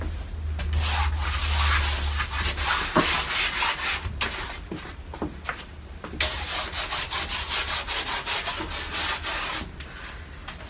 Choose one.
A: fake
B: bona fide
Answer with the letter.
B